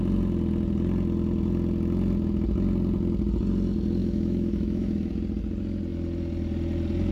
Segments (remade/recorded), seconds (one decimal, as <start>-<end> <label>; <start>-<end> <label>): 0.0-4.0 recorded; 4.0-5.1 remade; 5.1-7.1 recorded

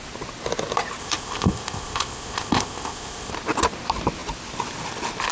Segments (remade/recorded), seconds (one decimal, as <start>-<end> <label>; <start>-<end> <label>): 0.0-1.0 recorded; 1.0-3.3 remade; 3.3-5.3 recorded